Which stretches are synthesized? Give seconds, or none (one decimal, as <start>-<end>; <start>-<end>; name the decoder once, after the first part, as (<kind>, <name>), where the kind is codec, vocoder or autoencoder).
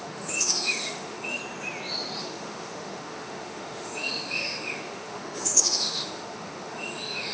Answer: 0.0-1.4 (autoencoder, DAC-VAE); 2.2-7.3